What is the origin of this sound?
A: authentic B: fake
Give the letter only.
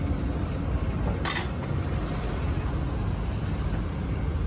A